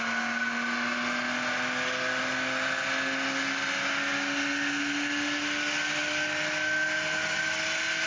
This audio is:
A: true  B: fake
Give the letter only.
A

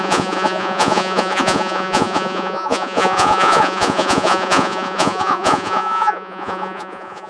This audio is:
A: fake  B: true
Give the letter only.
A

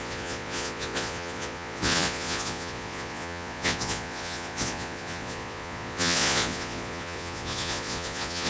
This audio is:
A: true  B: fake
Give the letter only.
B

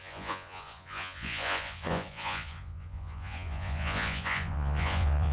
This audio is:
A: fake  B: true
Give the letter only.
A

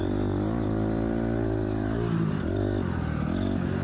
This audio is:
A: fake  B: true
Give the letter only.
B